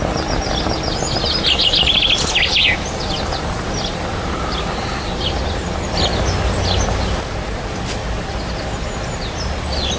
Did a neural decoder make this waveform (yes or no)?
no